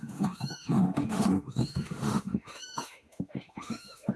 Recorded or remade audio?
remade